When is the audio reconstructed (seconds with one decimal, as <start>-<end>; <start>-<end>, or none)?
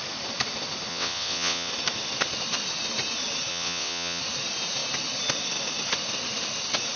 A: 0.9-1.7; 3.5-4.2